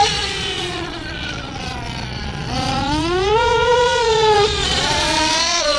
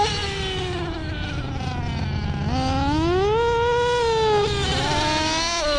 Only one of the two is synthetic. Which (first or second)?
first